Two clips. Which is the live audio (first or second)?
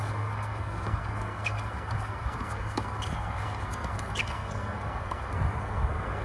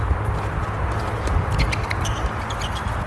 second